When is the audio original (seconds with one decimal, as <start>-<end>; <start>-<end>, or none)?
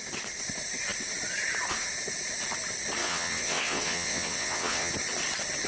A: 0.0-3.0; 4.9-5.7